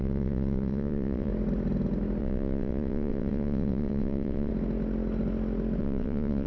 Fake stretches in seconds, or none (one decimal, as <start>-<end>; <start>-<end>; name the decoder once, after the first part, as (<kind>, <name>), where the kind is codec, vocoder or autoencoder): 0.0-1.3 (vocoder, WaveNeXt); 2.2-4.5; 5.8-6.5